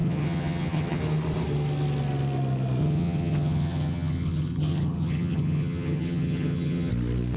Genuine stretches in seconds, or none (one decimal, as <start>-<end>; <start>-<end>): 1.0-2.8; 6.9-7.4